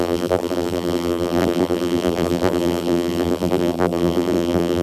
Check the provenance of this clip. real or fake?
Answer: fake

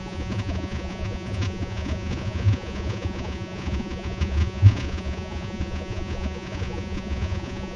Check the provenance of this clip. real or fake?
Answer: fake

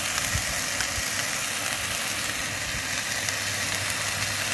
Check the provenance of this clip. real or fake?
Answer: real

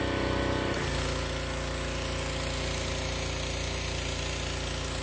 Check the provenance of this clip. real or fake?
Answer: real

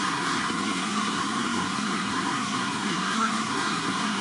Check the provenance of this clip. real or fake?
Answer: fake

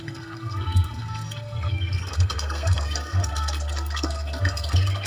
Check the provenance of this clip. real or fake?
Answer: fake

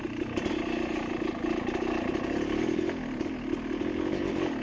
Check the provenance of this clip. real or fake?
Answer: real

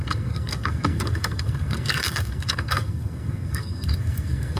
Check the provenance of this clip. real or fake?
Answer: fake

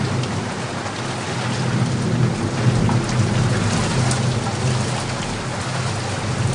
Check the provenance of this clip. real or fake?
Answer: real